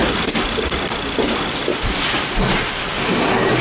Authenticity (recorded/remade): recorded